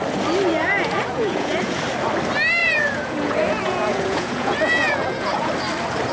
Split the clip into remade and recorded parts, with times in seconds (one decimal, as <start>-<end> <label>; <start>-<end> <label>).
0.0-0.6 recorded; 0.6-1.8 remade; 1.8-2.6 recorded; 2.6-5.5 remade; 5.5-6.1 recorded